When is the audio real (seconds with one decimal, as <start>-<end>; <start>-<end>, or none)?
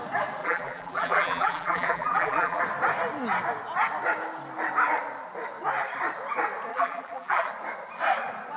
0.0-0.4; 2.6-6.7; 7.5-8.6